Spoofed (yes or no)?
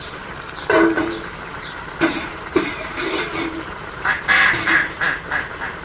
yes